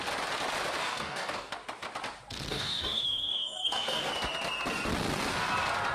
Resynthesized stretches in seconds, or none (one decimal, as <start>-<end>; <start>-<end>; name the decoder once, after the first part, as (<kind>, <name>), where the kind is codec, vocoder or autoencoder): 0.8-1.5 (codec, DAC); 2.5-4.1